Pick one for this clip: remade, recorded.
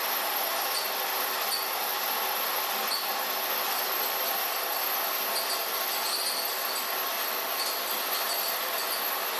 recorded